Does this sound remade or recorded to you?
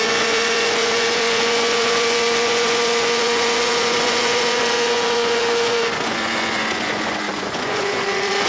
remade